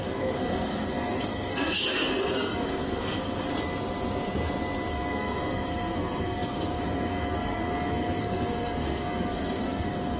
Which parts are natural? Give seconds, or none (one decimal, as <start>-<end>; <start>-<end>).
3.5-4.9